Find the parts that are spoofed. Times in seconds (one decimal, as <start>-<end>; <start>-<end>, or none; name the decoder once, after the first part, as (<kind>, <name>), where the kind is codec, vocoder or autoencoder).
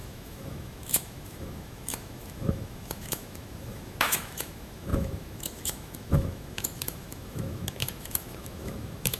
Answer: 0.0-9.2 (autoencoder, DAC-VAE)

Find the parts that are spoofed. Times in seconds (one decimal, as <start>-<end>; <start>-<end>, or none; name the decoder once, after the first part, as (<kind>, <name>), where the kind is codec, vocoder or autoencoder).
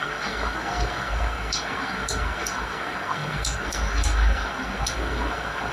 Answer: 0.0-5.7 (codec, SNAC)